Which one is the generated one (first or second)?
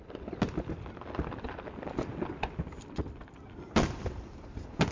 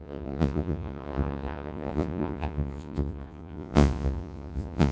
second